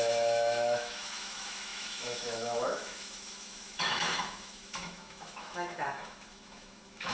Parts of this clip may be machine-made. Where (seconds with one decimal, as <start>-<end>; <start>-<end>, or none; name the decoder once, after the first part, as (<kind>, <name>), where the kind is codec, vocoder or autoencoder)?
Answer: 0.0-7.1 (autoencoder, DAC-VAE)